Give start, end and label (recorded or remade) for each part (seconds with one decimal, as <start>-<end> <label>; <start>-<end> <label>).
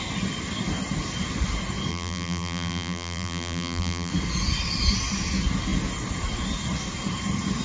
0.0-1.9 recorded; 1.9-4.1 remade; 4.1-7.6 recorded